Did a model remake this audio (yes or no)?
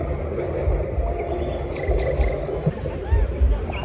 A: no